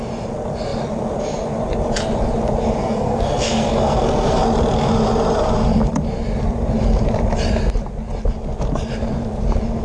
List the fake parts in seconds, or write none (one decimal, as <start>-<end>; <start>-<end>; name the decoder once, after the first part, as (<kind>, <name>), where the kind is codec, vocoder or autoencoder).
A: 2.8-4.4 (codec, SNAC)